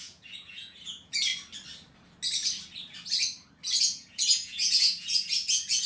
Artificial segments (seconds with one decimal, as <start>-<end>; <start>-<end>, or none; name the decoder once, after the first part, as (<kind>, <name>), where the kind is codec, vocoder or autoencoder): 0.0-1.3 (vocoder, Vocos); 3.8-5.9